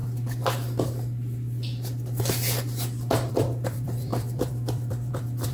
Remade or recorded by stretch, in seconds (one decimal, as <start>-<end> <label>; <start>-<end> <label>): 0.0-3.3 recorded; 3.3-5.5 remade